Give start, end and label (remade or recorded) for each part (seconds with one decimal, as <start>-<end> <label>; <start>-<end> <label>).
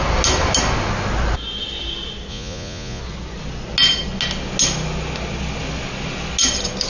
0.0-2.3 recorded; 2.3-3.0 remade; 3.0-6.9 recorded